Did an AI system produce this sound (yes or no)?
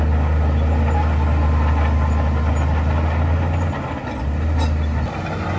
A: no